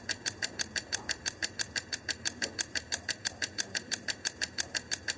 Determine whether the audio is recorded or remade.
remade